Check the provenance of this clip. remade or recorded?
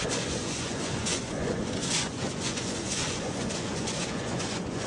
remade